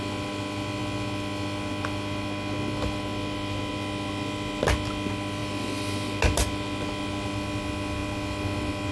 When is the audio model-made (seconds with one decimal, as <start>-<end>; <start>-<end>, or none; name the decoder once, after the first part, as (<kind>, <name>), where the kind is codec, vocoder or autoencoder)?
none